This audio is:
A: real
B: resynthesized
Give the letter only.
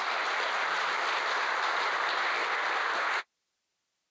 A